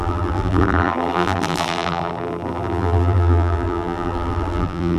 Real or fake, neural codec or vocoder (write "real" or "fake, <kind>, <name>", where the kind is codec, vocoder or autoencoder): fake, vocoder, BigVGAN v2